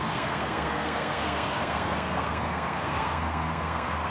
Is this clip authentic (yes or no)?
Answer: no